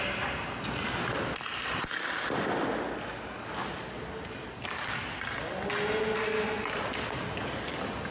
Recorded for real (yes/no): yes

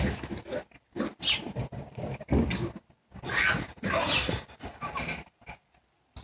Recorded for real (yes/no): yes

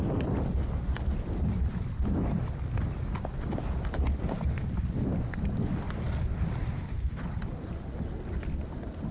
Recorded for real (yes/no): yes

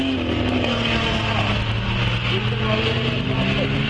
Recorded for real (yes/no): yes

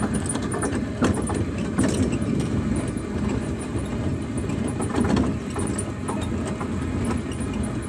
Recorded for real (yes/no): yes